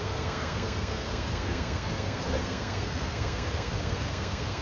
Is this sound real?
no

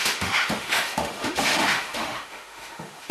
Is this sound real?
no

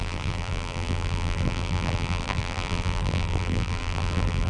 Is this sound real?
no